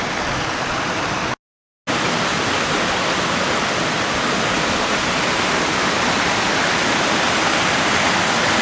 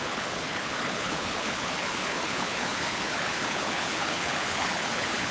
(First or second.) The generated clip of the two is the second